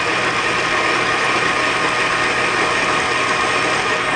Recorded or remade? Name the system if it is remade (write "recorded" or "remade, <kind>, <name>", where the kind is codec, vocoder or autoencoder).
recorded